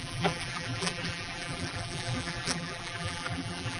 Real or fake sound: fake